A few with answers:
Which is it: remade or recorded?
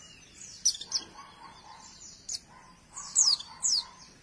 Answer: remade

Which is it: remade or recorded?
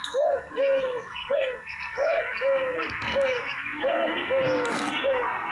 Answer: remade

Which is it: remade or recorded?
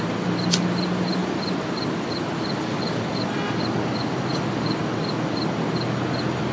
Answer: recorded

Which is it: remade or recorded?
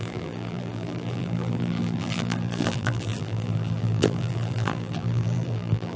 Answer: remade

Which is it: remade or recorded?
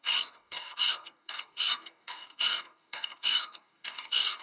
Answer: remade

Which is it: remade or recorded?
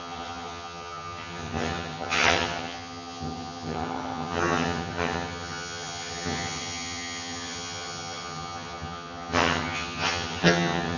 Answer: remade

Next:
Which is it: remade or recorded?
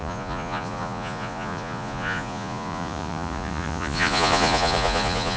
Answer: remade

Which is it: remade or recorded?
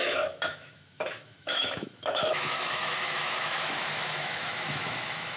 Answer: remade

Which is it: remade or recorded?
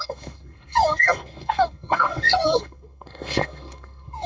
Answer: remade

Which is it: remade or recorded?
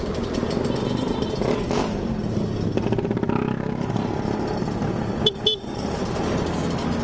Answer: recorded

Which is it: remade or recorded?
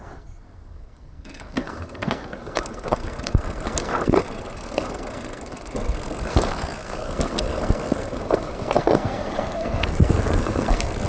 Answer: remade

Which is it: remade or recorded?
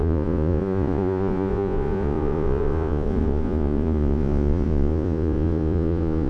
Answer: remade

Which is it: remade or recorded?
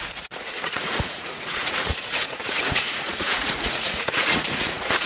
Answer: remade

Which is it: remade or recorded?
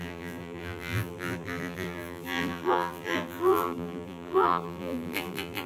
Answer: remade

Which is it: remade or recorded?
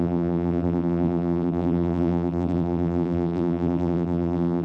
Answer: remade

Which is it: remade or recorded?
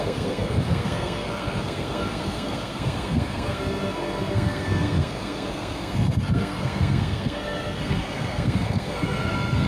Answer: remade